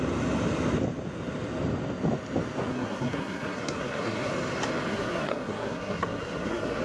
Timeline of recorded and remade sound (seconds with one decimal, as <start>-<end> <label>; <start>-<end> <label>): 0.0-2.7 recorded; 2.7-4.3 remade; 4.3-4.9 recorded; 4.9-6.8 remade